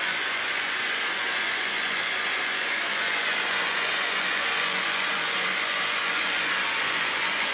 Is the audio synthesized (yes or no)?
yes